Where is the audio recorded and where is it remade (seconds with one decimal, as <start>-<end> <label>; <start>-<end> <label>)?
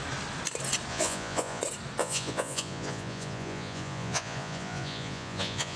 0.0-0.9 recorded; 0.9-1.6 remade; 1.6-2.0 recorded; 2.0-5.8 remade